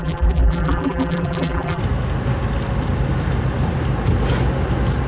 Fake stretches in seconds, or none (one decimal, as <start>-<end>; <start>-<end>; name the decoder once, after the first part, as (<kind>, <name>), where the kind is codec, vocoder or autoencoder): 0.0-1.8 (vocoder, BigVGAN v2)